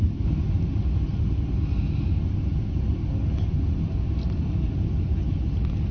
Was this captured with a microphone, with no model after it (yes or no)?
yes